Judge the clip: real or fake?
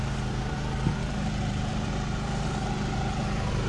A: fake